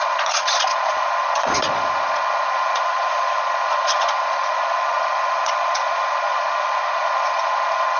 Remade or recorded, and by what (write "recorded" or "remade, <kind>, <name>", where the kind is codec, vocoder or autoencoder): remade, vocoder, Vocos